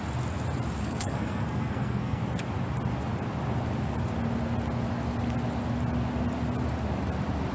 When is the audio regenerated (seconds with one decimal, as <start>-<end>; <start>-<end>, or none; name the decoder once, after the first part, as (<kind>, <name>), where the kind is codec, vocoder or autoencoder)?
0.8-2.2 (codec, SNAC)